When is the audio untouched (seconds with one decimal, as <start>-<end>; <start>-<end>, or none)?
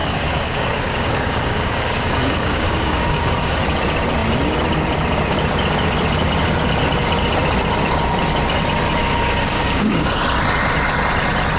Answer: 3.6-9.0; 10.1-11.6